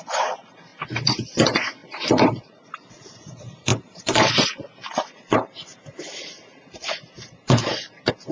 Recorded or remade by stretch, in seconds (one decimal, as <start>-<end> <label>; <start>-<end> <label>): 0.0-8.3 remade